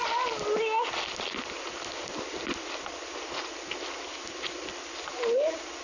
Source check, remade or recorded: recorded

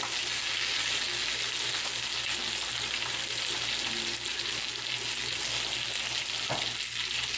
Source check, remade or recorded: recorded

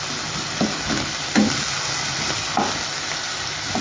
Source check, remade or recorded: recorded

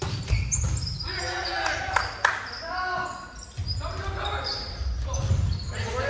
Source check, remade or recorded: recorded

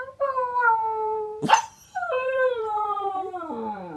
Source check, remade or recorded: remade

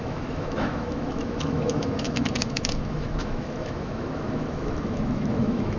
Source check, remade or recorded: remade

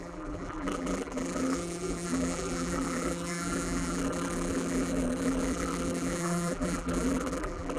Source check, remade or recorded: remade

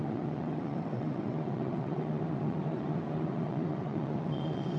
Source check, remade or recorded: remade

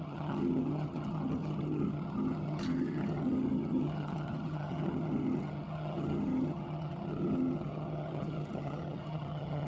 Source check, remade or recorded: remade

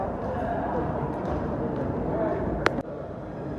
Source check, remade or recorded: remade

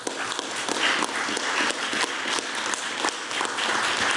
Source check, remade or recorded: recorded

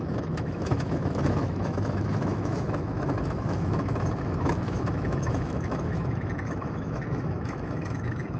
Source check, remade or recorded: remade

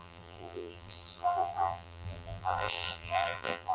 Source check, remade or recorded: remade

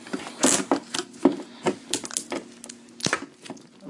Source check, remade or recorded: recorded